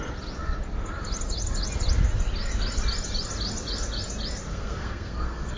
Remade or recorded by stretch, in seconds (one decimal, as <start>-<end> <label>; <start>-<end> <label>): 0.0-4.5 recorded; 4.5-5.6 remade